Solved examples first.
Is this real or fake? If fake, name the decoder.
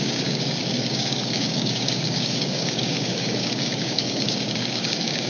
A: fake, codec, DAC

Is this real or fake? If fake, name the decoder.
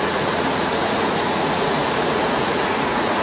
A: fake, vocoder, Vocos